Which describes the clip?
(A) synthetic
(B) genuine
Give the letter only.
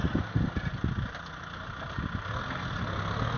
B